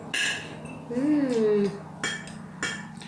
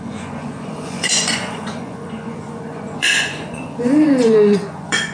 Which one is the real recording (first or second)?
first